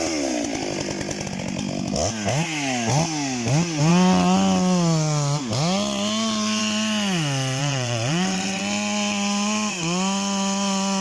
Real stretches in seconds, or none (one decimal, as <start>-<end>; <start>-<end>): 0.0-7.6; 8.6-11.0